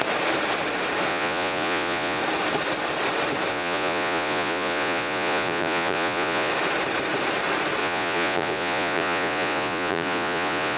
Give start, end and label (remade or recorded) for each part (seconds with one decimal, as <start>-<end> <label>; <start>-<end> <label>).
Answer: 0.0-1.1 recorded; 1.1-2.2 remade; 2.2-3.5 recorded; 3.5-6.5 remade; 6.5-7.8 recorded; 7.8-10.8 remade